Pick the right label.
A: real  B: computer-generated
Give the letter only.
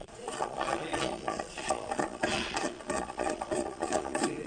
B